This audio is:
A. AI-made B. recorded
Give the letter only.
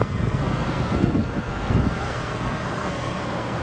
A